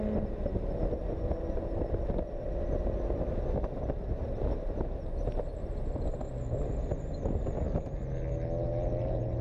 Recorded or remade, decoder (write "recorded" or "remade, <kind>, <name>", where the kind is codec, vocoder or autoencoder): recorded